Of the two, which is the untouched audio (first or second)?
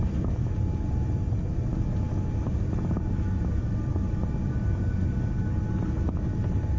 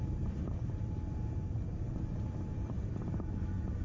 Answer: first